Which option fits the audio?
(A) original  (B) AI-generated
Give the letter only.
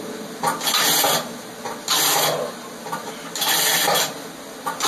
A